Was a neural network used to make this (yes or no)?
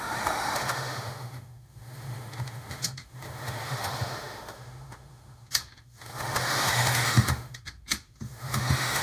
yes